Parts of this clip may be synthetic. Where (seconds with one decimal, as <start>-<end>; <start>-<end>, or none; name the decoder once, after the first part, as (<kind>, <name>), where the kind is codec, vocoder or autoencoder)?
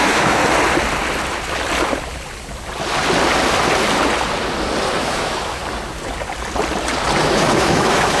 0.0-0.4 (autoencoder, DAC-VAE); 5.0-5.6; 7.2-8.2